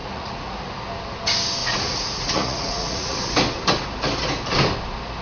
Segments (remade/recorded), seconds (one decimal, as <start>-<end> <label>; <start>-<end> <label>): 0.0-0.7 remade; 0.7-1.6 recorded; 1.6-3.3 remade; 3.3-5.2 recorded

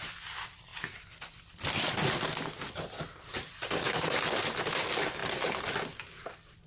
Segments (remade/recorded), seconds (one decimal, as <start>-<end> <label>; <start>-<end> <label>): 0.0-6.7 recorded